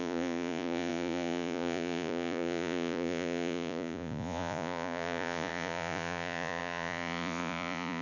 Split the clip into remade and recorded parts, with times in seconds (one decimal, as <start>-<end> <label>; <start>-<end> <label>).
0.0-8.0 remade